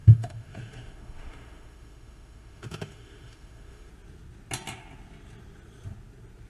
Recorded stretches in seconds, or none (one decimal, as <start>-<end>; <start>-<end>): 3.9-6.5